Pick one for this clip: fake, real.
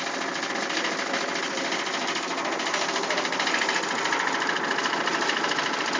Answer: real